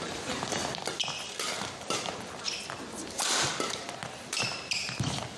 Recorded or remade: recorded